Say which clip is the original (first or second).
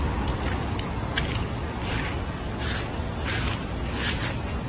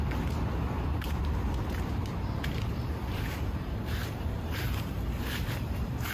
first